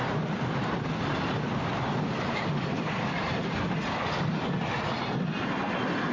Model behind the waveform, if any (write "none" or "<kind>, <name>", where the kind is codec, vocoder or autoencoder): none